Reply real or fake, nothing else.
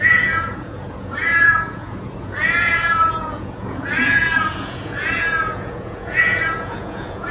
fake